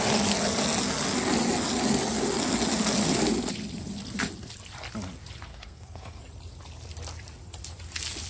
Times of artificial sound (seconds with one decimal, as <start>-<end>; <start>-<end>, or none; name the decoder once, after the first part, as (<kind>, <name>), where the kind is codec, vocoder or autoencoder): 5.5-6.2 (codec, SNAC)